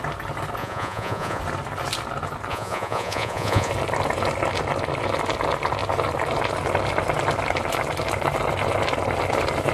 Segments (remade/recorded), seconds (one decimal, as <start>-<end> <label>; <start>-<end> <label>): 0.0-0.6 recorded; 0.6-1.4 remade; 1.4-2.5 recorded; 2.5-3.7 remade; 3.7-9.7 recorded

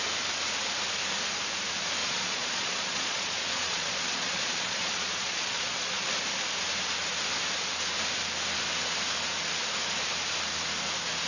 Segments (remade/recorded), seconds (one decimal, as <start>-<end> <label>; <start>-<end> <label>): 0.0-2.0 recorded; 2.0-6.1 remade; 6.1-11.3 recorded

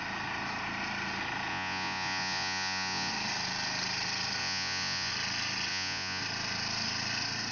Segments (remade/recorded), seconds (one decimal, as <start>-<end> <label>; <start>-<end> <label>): 0.0-1.5 recorded; 1.5-3.1 remade; 3.1-4.4 recorded; 4.4-5.1 remade; 5.1-5.7 recorded; 5.7-6.2 remade; 6.2-7.5 recorded

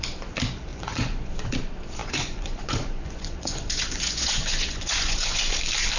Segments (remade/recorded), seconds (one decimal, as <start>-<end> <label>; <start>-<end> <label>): 0.0-0.7 recorded; 0.7-1.3 remade; 1.3-2.0 recorded; 2.0-5.6 remade; 5.6-6.0 recorded

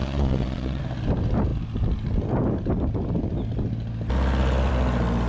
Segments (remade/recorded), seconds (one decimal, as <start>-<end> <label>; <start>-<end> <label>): 0.0-0.8 remade; 0.8-5.3 recorded

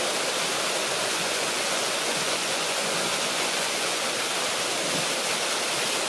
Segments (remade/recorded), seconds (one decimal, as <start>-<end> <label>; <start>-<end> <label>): 0.0-0.8 recorded; 0.8-4.0 remade; 4.0-6.1 recorded

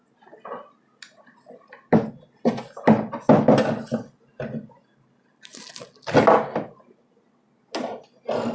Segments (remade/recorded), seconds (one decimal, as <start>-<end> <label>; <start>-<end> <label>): 0.0-8.5 recorded